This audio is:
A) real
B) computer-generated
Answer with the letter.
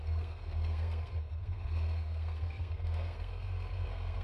B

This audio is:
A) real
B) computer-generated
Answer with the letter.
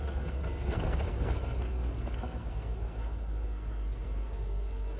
B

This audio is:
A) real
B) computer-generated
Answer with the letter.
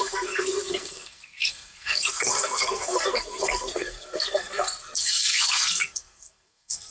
B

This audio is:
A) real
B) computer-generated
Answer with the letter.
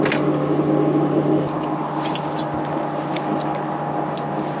A